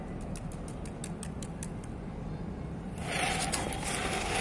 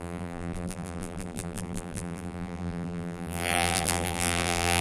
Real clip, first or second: first